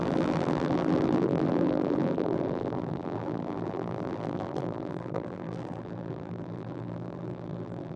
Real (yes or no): no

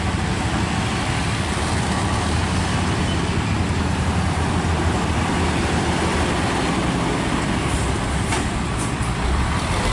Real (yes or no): no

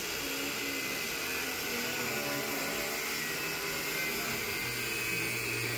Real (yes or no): yes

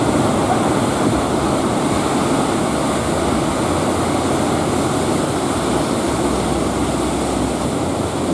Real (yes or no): yes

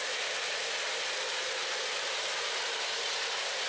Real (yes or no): yes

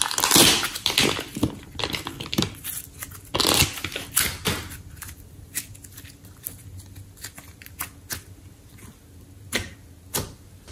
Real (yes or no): yes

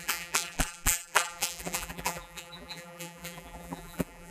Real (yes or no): no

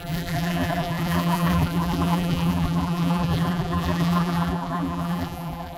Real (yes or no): no